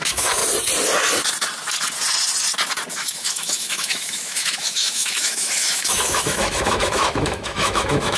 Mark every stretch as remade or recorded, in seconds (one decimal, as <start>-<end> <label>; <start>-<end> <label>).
0.0-0.4 remade; 0.4-2.9 recorded; 2.9-8.2 remade